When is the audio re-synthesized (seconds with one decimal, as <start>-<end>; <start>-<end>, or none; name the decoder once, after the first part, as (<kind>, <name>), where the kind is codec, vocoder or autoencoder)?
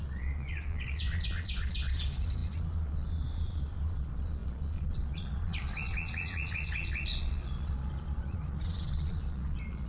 0.0-9.9 (vocoder, Vocos)